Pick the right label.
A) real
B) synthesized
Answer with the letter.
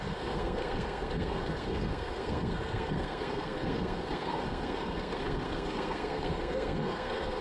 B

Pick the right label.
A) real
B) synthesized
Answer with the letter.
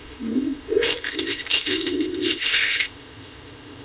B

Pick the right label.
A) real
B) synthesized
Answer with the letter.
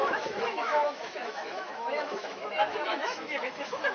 B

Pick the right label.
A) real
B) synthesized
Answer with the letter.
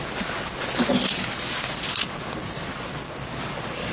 A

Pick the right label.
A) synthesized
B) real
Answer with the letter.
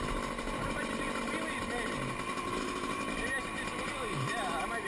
B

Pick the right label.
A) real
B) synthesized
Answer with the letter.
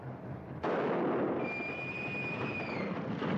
A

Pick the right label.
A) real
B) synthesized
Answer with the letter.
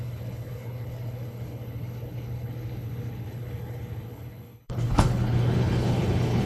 B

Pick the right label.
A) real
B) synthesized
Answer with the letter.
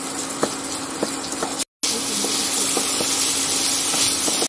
A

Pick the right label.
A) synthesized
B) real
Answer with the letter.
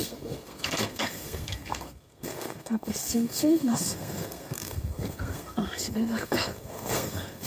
A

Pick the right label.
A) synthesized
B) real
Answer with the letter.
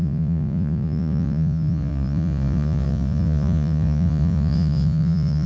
A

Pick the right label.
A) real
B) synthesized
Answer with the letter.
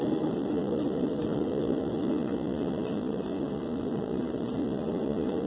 B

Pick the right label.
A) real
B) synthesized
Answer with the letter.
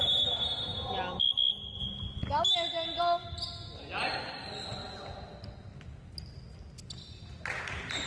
A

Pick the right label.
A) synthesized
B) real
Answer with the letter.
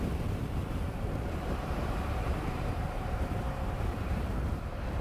A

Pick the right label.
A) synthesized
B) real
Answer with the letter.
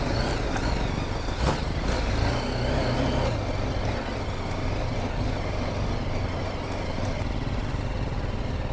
B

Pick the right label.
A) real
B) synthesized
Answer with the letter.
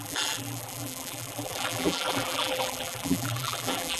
B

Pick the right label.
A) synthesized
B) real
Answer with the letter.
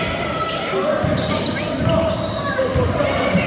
B